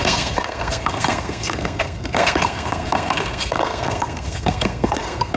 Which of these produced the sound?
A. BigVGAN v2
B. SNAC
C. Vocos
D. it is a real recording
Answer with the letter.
B